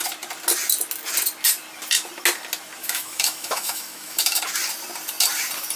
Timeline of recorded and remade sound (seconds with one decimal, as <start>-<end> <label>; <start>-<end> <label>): 0.0-2.8 recorded; 2.8-4.4 remade; 4.4-5.8 recorded